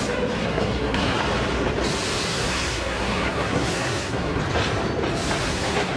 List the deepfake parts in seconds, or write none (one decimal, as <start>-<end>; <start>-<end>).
0.4-1.2; 2.3-4.4; 5.4-6.0